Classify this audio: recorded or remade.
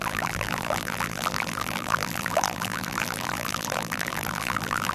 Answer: remade